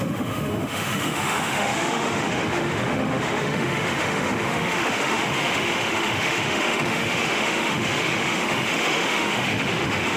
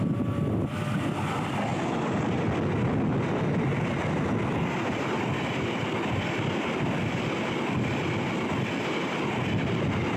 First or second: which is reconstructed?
first